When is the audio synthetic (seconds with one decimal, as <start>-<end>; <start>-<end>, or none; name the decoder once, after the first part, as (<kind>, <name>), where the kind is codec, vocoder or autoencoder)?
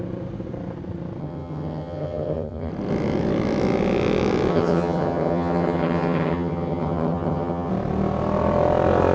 1.2-2.7 (vocoder, HiFi-GAN); 4.5-7.7